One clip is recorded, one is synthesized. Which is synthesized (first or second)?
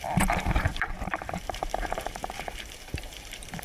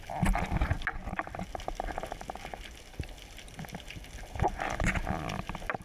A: first